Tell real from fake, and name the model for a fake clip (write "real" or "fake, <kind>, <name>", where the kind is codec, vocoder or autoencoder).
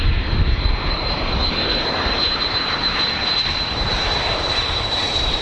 fake, vocoder, BigVGAN v2